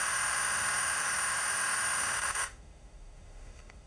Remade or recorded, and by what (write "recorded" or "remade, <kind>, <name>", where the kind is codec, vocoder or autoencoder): remade, autoencoder, DAC-VAE